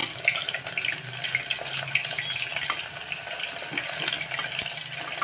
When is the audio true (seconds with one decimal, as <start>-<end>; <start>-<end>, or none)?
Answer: 0.0-5.2